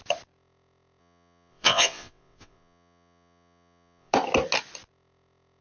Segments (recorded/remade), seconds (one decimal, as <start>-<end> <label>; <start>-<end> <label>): 0.0-1.0 recorded; 1.0-4.1 remade; 4.1-5.6 recorded